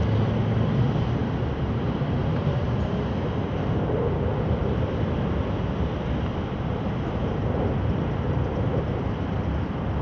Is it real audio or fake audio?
real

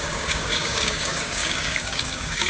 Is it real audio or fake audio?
fake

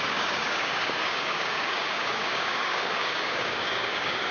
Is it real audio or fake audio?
fake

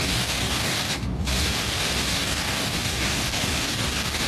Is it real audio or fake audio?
fake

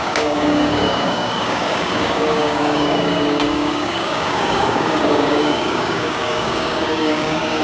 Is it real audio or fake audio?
fake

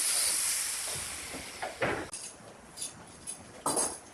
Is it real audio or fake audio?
real